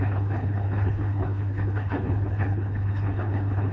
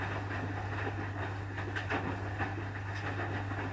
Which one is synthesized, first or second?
first